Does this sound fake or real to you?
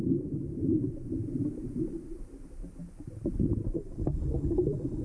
fake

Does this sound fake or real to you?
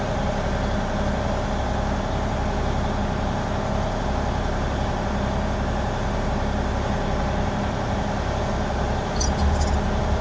real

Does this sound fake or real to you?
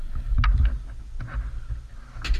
real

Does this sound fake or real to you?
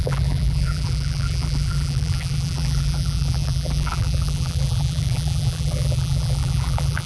fake